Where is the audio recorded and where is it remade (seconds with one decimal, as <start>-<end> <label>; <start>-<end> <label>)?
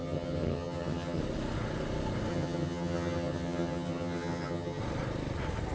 0.0-1.2 remade; 1.2-2.3 recorded; 2.3-4.8 remade; 4.8-5.7 recorded